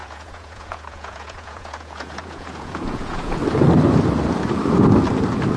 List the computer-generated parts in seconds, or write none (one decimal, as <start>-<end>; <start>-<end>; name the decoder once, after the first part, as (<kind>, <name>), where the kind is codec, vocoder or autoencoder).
0.0-3.4 (vocoder, Vocos)